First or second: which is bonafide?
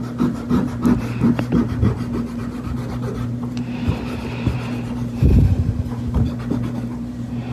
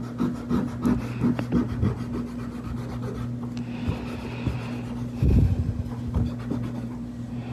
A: second